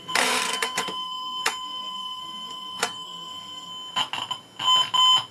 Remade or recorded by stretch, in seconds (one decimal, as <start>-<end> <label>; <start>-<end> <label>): 0.0-3.7 remade; 3.7-5.3 recorded